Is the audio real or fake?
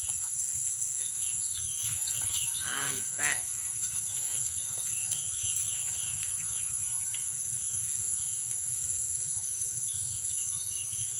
fake